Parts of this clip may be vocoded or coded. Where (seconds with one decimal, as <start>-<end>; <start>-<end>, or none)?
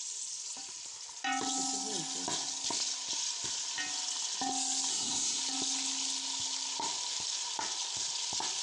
4.9-5.4